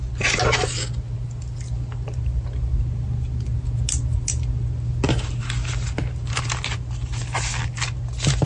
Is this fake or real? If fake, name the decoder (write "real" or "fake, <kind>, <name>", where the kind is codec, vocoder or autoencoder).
real